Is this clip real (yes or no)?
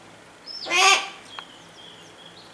yes